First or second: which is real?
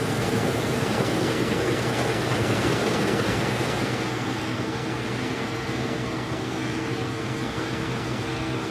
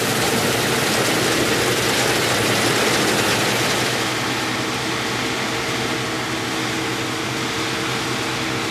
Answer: second